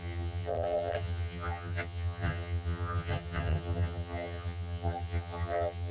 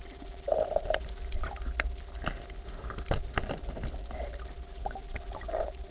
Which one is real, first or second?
second